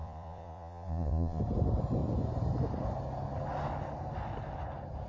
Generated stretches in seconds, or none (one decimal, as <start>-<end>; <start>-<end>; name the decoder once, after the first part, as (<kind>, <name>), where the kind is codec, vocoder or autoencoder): 0.0-1.4 (vocoder, Vocos)